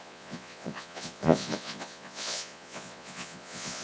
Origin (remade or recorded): remade